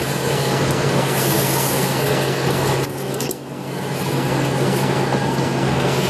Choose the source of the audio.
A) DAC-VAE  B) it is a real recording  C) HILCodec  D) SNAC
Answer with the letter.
D